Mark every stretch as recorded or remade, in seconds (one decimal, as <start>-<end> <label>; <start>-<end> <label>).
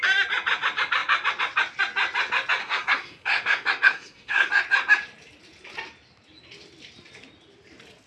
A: 0.0-2.6 recorded; 2.6-4.5 remade; 4.5-8.1 recorded